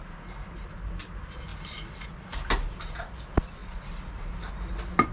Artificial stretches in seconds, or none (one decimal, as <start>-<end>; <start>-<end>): none